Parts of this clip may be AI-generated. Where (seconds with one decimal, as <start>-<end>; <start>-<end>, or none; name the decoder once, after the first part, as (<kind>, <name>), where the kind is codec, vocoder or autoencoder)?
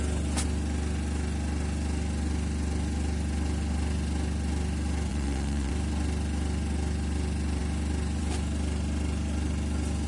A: 5.1-5.7 (vocoder, Vocos)